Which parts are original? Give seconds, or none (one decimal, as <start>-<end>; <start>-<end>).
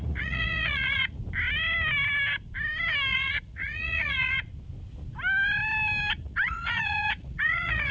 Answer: 1.2-3.1; 4.5-6.1